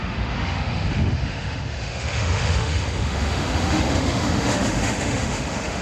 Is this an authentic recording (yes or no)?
no